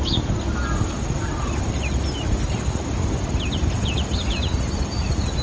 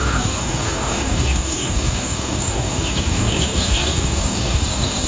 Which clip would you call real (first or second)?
first